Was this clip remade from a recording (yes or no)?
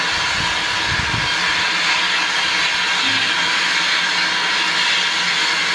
no